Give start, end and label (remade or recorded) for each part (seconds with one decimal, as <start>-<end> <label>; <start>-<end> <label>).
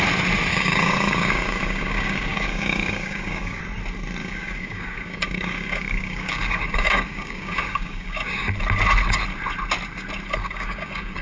0.0-0.5 recorded; 0.5-3.6 remade; 3.6-4.2 recorded; 4.2-8.5 remade; 8.5-10.4 recorded; 10.4-11.2 remade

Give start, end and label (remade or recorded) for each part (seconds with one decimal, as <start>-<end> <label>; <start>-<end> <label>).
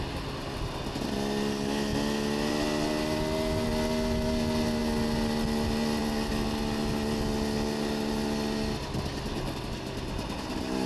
0.0-10.9 recorded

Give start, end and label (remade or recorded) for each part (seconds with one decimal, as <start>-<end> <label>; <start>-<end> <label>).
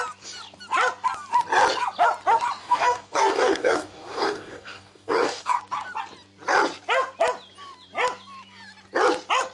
0.0-2.6 recorded; 2.6-5.6 remade; 5.6-9.5 recorded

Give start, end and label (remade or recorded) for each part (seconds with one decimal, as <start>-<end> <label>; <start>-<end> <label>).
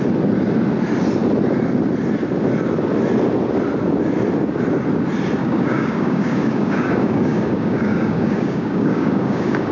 0.0-5.4 recorded; 5.4-9.7 remade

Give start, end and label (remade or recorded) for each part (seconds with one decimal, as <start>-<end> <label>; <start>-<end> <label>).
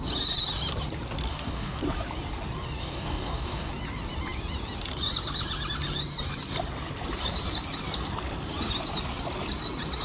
0.0-1.3 recorded; 1.3-1.8 remade; 1.8-2.8 recorded; 2.8-3.7 remade; 3.7-10.0 recorded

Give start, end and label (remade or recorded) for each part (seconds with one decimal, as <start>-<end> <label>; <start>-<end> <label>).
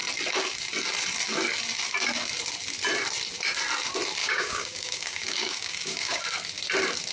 0.0-4.2 recorded; 4.2-6.2 remade; 6.2-7.1 recorded